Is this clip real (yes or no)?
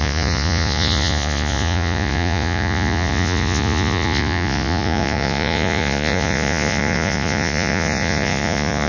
no